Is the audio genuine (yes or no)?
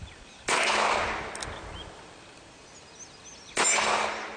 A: yes